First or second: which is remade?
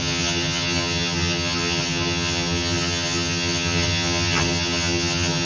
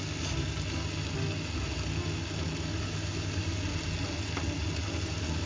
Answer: first